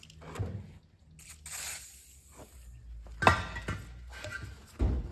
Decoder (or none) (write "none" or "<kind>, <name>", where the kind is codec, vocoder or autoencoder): none